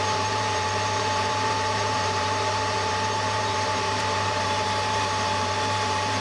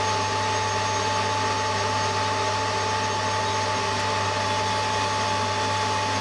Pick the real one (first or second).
second